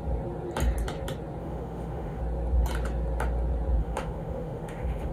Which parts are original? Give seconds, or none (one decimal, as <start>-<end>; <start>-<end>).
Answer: 0.0-1.4; 2.2-3.8